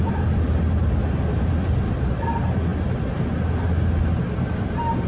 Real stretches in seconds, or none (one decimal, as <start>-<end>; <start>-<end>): 0.0-5.1